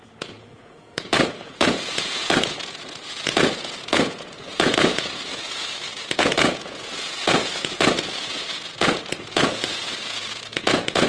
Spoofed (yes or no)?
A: yes